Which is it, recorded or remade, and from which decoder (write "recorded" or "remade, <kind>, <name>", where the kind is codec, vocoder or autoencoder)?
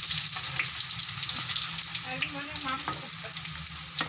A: recorded